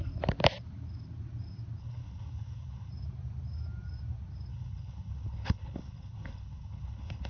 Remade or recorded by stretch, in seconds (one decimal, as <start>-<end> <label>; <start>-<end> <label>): 0.0-1.8 recorded; 1.8-2.9 remade; 2.9-4.5 recorded; 4.5-7.3 remade